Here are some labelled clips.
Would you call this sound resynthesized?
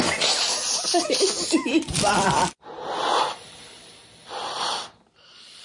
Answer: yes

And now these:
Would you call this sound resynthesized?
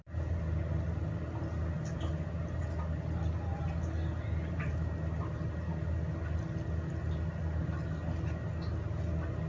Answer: no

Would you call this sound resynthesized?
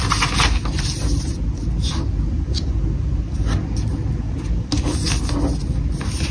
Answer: no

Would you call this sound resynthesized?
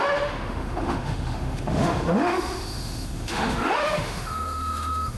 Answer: yes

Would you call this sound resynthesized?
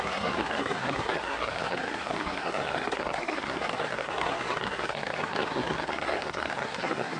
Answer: yes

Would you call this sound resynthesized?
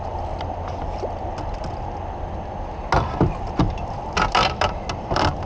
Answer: no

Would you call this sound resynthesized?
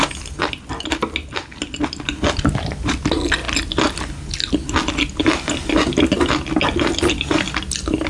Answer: no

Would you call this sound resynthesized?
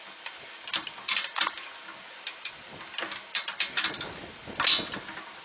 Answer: no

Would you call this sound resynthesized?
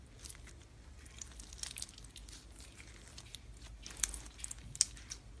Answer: no